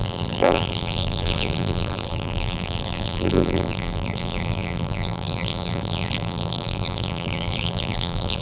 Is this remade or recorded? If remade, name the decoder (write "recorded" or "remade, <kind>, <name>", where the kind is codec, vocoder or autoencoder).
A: remade, vocoder, BigVGAN v2